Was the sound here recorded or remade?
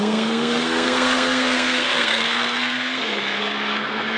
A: remade